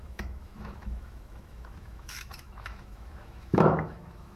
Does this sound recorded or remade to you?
remade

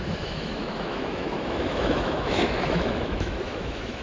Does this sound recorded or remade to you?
remade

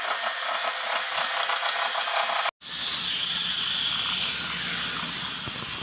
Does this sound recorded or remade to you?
recorded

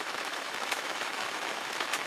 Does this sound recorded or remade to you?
remade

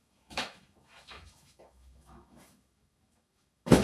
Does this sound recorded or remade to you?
remade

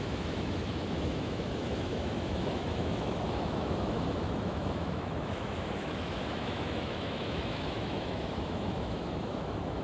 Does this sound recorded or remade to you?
remade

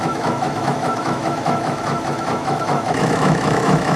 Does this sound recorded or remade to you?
remade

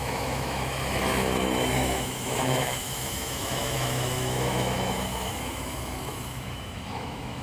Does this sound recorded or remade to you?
remade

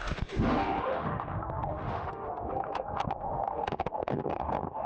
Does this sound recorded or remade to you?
remade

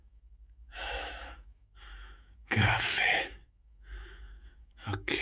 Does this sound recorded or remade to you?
remade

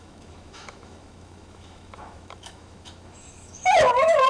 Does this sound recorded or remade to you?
remade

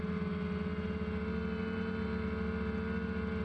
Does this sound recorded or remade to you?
recorded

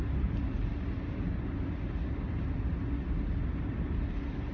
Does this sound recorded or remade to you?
recorded